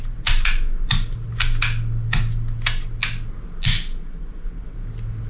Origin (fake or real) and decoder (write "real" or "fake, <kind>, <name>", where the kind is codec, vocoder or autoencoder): real